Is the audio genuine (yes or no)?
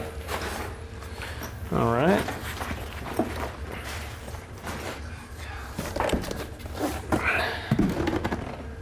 yes